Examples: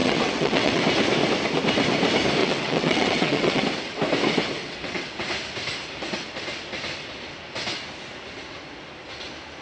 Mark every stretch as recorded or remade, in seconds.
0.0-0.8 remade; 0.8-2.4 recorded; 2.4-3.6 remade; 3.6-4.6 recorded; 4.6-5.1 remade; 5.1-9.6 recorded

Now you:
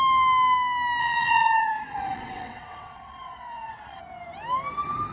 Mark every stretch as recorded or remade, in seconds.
0.0-1.0 recorded; 1.0-4.0 remade; 4.0-5.1 recorded

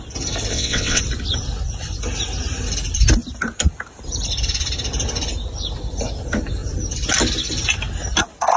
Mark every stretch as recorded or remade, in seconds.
0.0-0.5 recorded; 0.5-1.0 remade; 1.0-8.6 recorded

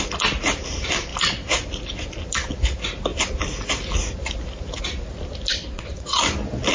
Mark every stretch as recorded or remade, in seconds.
0.0-5.5 recorded; 5.5-6.2 remade; 6.2-6.7 recorded